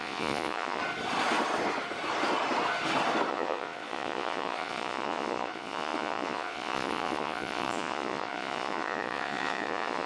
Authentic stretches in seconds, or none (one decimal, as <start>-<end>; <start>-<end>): 0.8-3.3